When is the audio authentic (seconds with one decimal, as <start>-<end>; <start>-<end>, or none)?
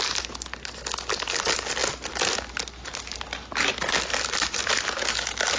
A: 0.0-5.6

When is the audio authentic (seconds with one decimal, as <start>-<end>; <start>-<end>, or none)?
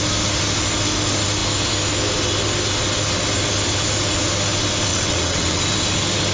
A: 0.0-4.9; 5.6-6.3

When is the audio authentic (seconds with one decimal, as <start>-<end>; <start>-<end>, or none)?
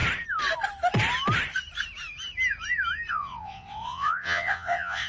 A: 0.0-3.1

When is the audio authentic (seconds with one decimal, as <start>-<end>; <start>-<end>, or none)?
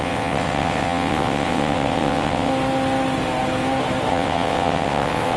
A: 2.5-4.1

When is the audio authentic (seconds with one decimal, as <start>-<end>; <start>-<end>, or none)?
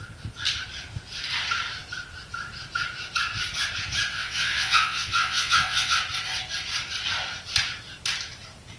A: 0.0-4.1; 6.0-8.8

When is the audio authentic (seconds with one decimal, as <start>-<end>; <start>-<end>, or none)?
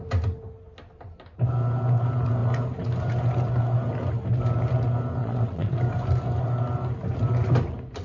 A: 0.0-5.2; 5.8-8.0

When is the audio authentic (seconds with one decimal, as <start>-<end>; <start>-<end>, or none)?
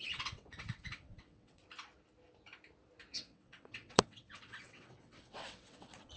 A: 1.6-3.1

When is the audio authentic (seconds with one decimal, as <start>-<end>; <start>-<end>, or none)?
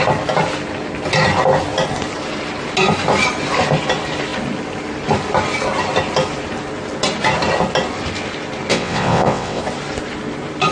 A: 0.0-8.7; 9.6-10.7